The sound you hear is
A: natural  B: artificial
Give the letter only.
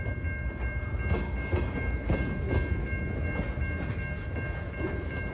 A